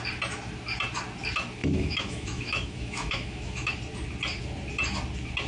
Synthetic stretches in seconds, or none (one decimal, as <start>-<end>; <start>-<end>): 1.6-3.7